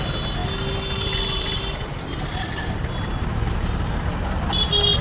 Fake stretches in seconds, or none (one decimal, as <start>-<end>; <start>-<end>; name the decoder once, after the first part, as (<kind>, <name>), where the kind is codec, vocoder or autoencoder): none